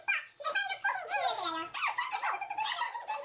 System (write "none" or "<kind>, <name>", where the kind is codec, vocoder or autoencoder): none